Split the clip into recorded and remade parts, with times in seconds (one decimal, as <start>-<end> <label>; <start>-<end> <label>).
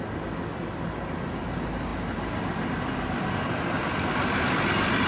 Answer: 0.0-5.1 recorded